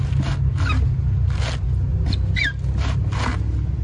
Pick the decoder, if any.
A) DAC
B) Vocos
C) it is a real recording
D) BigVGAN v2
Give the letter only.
C